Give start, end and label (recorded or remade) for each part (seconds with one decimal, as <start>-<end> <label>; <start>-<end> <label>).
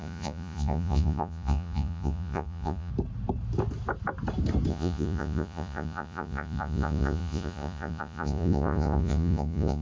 0.0-2.9 remade; 2.9-4.7 recorded; 4.7-9.8 remade